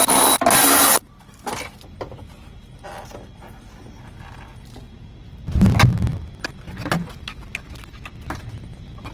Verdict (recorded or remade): recorded